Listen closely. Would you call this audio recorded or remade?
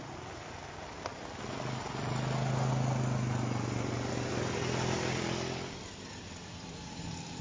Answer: recorded